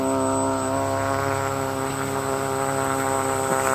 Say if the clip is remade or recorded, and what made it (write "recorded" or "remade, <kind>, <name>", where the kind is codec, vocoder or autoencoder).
recorded